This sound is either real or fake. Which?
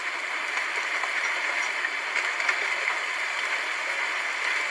real